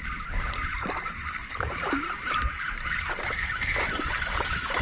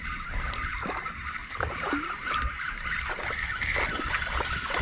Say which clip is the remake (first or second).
first